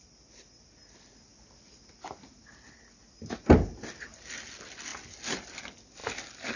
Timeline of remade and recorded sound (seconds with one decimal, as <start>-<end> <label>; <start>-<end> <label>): 0.0-6.6 recorded

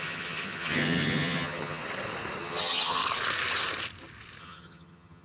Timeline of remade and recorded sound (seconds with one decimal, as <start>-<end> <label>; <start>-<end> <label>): 0.0-1.8 remade; 1.8-2.4 recorded; 2.4-3.0 remade; 3.0-4.4 recorded; 4.4-5.2 remade

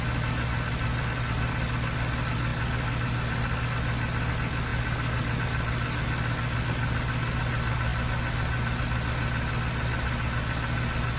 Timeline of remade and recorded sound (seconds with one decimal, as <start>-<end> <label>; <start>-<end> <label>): 0.0-11.2 recorded

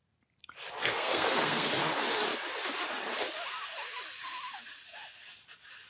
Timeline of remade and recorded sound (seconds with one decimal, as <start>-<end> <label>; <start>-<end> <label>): 0.0-0.8 recorded; 0.8-1.7 remade; 1.7-5.9 recorded

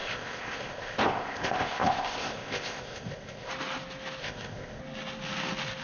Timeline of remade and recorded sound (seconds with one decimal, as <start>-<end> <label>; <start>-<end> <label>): 0.0-3.5 remade; 3.5-4.2 recorded; 4.2-4.8 remade; 4.8-5.8 recorded

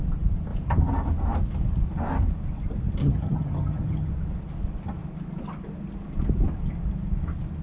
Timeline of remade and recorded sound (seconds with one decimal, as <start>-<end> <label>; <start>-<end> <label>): 0.0-3.0 recorded; 3.0-4.1 remade; 4.1-7.6 recorded

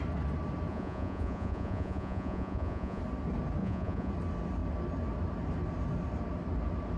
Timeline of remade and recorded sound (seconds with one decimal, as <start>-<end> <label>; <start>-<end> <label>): 0.0-0.7 recorded; 0.7-3.0 remade; 3.0-3.6 recorded; 3.6-4.1 remade; 4.1-7.0 recorded

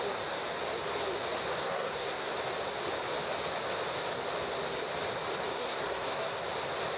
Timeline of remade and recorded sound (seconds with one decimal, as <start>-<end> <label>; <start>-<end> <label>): 0.0-1.6 recorded; 1.6-2.3 remade; 2.3-5.5 recorded; 5.5-6.4 remade; 6.4-7.0 recorded